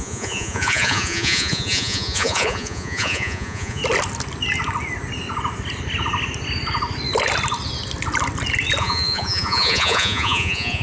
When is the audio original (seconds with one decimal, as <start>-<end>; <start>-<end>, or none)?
3.8-8.8